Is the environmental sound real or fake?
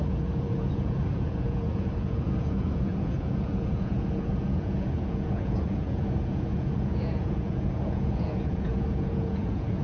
fake